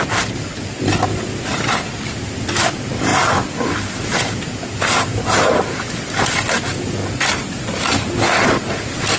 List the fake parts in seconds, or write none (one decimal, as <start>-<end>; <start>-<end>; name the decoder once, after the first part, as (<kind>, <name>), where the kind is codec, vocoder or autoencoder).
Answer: none